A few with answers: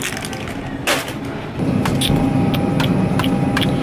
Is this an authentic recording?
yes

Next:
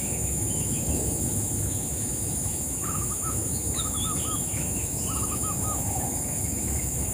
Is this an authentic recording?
no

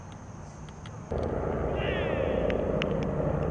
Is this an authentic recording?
yes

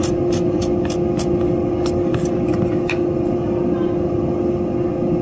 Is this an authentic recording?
yes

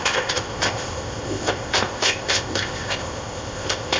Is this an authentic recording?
no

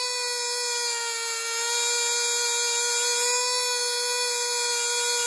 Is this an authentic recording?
yes